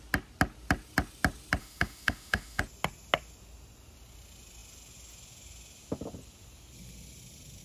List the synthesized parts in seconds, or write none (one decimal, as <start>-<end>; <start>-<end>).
1.6-2.6